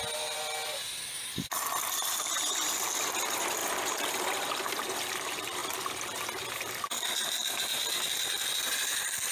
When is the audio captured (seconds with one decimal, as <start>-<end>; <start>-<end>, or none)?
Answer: 0.0-3.6; 4.6-5.6; 6.8-7.8; 8.6-9.3